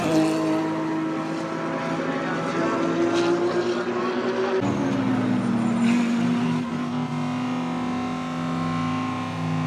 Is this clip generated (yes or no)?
no